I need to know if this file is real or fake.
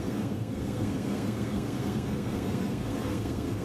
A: fake